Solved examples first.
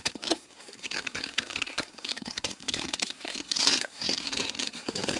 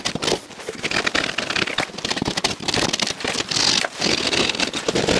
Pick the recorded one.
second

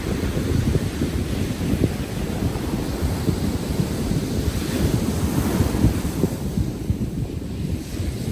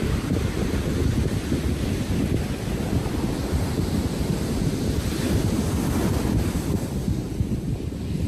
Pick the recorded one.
second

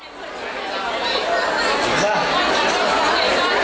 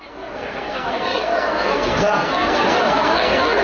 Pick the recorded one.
first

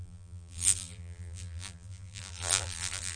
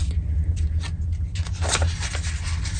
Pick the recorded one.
second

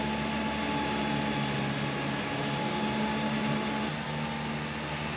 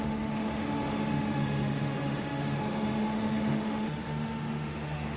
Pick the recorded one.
first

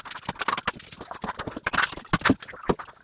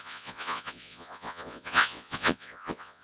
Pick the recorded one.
first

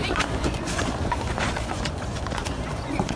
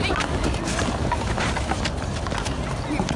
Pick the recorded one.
second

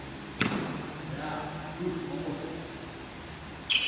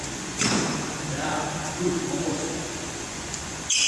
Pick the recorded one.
first